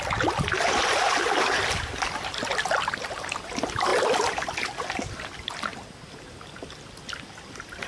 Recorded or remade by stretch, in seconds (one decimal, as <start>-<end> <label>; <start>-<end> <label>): 0.0-7.9 recorded